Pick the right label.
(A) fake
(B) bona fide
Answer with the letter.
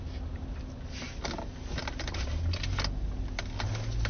B